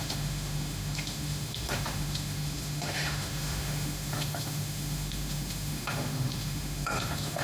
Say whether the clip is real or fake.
fake